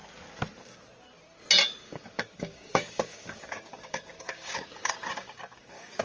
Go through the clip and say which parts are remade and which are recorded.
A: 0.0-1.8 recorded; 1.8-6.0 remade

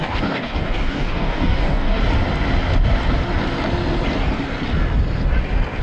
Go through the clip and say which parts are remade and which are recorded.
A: 0.0-2.0 remade; 2.0-5.8 recorded